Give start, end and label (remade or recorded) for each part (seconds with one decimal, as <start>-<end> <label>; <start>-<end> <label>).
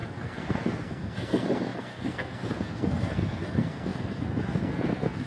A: 0.0-5.3 remade